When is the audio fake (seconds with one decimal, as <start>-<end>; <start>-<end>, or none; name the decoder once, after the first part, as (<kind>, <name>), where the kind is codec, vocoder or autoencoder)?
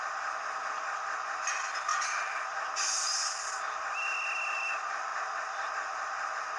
none